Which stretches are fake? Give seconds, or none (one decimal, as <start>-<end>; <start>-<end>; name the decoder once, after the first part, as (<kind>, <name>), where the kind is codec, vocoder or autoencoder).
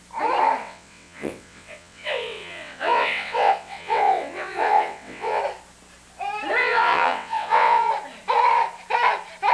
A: 0.6-5.4 (vocoder, WaveNeXt); 6.6-7.9